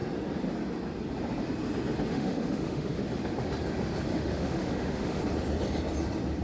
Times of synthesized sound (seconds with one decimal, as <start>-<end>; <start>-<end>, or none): 2.1-3.0; 4.1-5.2

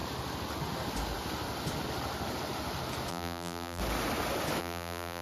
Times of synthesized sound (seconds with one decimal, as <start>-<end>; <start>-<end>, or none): 3.1-3.8; 4.6-5.2

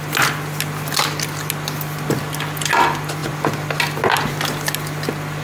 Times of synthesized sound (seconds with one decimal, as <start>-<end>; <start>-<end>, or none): none

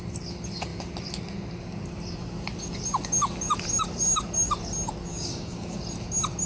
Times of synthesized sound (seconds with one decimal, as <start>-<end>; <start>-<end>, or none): 5.1-5.8